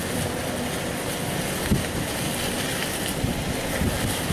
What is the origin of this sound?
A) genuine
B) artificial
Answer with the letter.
A